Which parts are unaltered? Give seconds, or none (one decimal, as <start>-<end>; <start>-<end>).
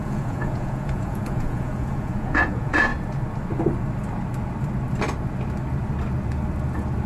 2.9-7.1